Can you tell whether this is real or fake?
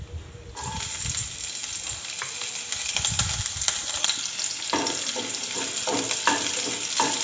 real